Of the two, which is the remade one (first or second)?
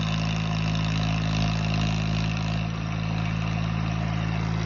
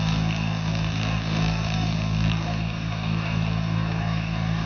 second